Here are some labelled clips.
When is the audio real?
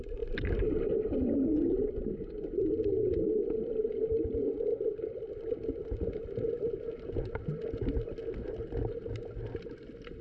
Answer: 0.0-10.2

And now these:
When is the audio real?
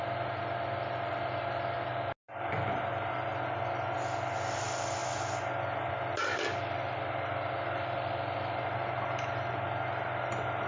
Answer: 0.0-10.7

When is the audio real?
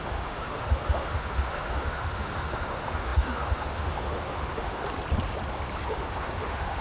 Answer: 4.8-5.9